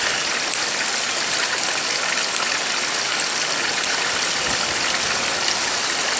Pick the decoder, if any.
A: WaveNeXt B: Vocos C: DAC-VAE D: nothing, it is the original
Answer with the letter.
D